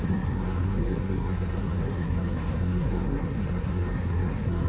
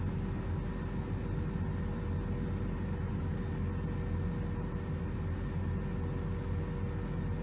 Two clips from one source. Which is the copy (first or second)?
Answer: first